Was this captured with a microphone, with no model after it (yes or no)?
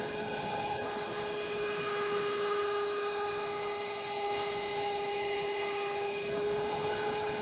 no